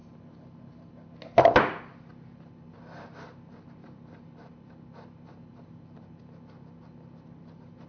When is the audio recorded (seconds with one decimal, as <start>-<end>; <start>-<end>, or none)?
0.0-7.9